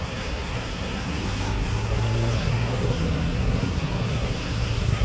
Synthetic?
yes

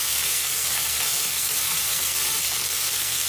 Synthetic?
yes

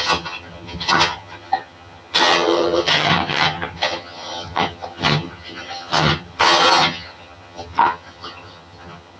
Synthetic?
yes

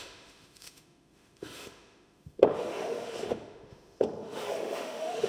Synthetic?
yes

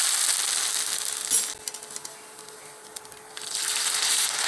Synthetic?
no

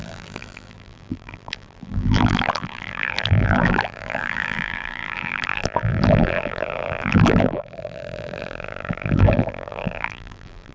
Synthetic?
yes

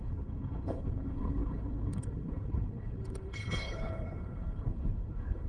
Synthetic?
yes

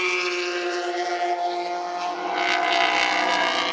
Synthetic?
no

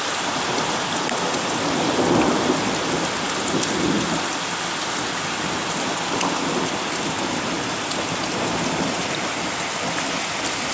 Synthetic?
no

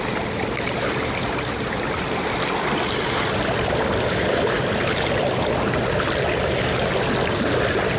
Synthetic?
no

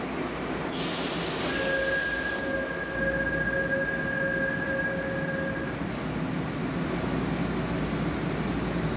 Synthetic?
no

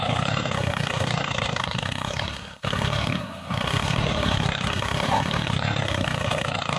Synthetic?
yes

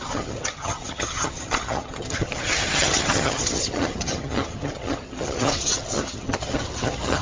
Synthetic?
yes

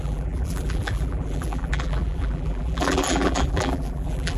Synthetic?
yes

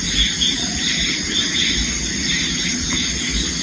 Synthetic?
no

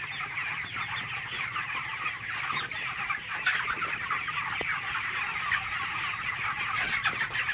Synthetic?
no